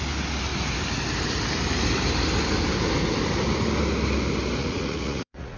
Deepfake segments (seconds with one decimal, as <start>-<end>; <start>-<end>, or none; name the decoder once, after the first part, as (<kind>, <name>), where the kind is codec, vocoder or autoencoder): 4.6-5.6 (vocoder, Vocos)